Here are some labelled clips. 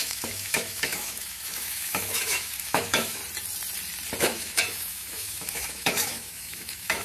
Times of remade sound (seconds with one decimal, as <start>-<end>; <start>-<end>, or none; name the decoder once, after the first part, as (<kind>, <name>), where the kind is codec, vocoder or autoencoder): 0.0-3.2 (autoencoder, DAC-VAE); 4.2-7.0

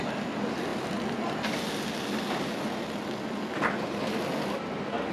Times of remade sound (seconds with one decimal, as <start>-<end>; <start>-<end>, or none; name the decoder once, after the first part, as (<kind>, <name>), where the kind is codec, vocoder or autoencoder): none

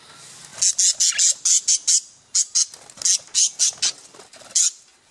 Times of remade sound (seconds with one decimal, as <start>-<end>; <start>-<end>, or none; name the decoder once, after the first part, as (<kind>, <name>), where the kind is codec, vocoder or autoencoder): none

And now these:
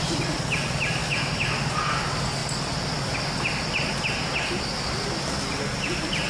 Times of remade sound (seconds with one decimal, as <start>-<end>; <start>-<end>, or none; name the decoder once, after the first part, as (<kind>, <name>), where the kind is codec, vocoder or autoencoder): 1.0-1.6 (autoencoder, DAC-VAE)

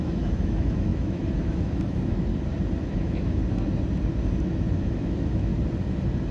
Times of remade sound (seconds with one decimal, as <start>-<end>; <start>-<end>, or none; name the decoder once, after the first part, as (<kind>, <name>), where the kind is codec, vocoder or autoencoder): 0.0-2.3 (autoencoder, DAC-VAE); 2.9-3.4; 4.4-5.5